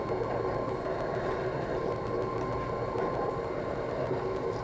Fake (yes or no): no